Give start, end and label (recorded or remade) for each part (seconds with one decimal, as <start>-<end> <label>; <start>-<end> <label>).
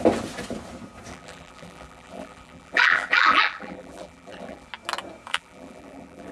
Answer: 0.0-1.1 recorded; 1.1-4.7 remade; 4.7-5.3 recorded; 5.3-6.3 remade